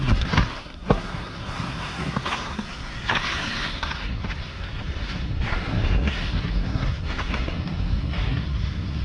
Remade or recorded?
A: remade